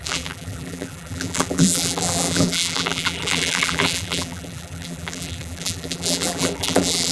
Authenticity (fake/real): fake